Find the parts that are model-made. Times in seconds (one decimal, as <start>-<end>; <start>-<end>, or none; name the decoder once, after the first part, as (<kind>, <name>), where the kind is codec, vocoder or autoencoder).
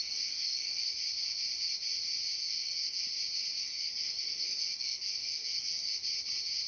0.0-0.8 (codec, SNAC); 2.4-3.0; 3.6-5.9